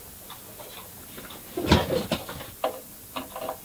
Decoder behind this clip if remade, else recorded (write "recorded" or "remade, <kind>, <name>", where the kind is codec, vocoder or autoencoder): recorded